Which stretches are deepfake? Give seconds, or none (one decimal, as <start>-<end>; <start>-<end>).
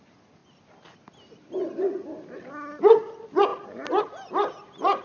none